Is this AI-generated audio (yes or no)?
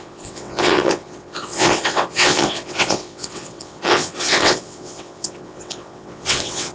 yes